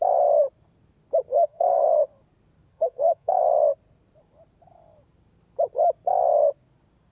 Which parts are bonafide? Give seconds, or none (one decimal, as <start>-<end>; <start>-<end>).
0.0-1.3; 2.0-2.7; 3.4-7.1